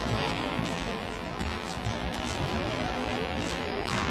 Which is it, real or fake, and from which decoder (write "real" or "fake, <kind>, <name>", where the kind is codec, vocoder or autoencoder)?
fake, vocoder, BigVGAN v2